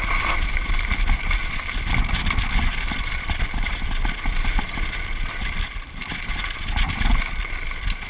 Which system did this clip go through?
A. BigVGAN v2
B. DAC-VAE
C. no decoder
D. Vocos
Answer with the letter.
C